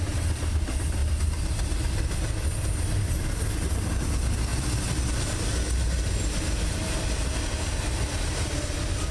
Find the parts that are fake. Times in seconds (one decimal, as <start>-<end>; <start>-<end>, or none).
none